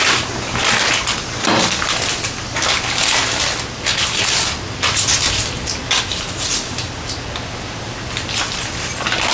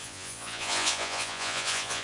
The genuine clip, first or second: first